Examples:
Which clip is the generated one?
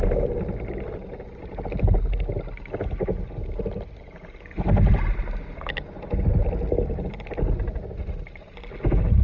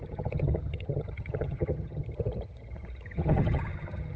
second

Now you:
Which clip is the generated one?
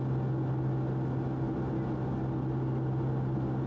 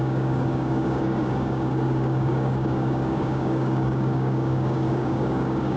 second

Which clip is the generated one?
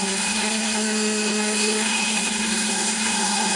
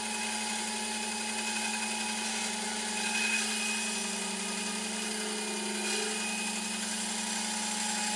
first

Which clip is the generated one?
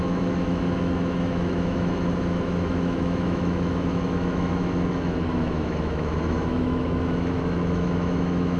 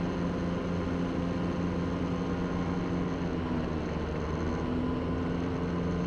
first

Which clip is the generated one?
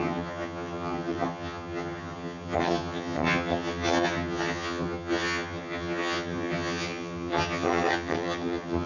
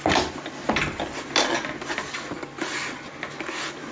first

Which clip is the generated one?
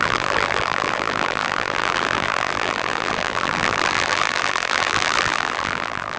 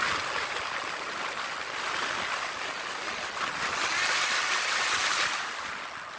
first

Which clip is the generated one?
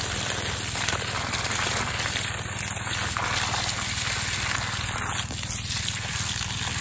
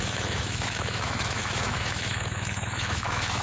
second